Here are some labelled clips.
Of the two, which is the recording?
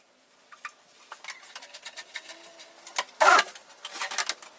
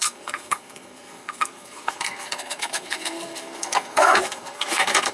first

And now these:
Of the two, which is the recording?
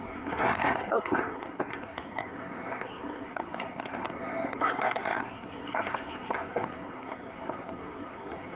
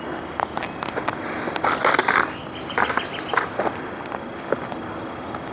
second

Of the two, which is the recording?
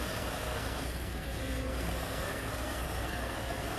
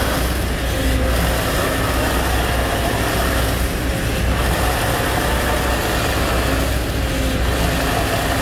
second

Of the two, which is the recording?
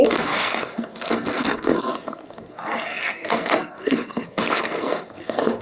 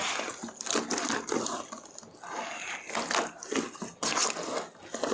second